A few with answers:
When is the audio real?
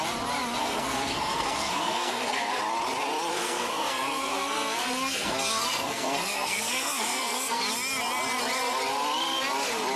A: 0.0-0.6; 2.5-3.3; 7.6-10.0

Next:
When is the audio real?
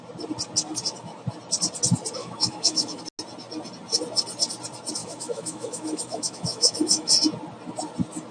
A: 0.0-2.2; 3.0-5.0; 7.1-8.3